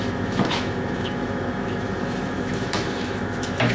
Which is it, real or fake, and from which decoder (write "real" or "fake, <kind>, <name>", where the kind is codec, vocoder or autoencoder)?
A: fake, autoencoder, DAC-VAE